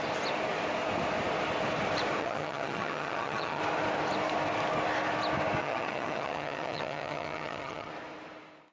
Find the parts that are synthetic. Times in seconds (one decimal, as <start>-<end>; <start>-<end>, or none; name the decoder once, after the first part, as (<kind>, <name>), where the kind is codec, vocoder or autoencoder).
2.2-3.6 (vocoder, HiFi-GAN); 5.6-7.9